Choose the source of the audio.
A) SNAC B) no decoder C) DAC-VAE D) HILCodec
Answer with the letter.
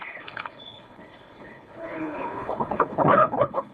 D